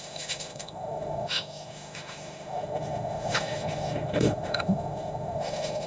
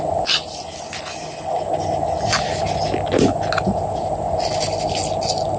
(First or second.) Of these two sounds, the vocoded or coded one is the first